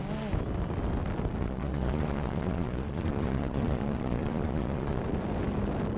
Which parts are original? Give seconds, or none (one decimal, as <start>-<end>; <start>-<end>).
0.0-1.4; 5.0-6.0